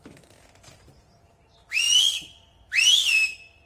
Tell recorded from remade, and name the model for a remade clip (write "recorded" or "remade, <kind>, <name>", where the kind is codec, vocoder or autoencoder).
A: recorded